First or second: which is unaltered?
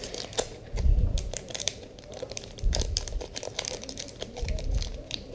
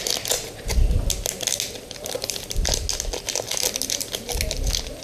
second